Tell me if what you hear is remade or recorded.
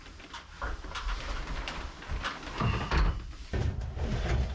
recorded